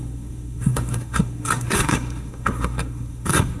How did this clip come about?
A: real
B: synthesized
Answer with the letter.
B